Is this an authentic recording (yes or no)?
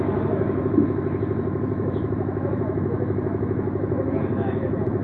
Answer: no